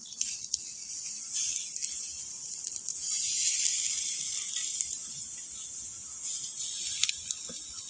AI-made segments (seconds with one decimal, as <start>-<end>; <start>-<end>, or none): 2.9-3.5; 5.0-6.6